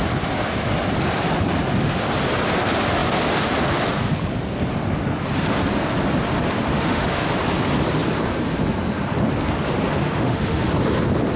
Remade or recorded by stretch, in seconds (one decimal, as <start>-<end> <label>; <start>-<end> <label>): 0.0-6.7 recorded; 6.7-7.3 remade; 7.3-10.0 recorded; 10.0-10.7 remade; 10.7-11.4 recorded